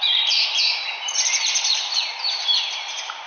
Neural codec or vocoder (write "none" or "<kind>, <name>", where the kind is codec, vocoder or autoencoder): none